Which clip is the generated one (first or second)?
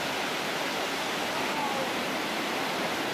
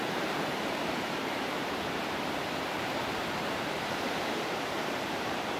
second